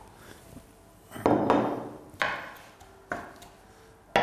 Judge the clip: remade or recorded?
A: recorded